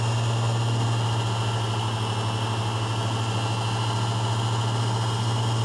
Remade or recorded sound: recorded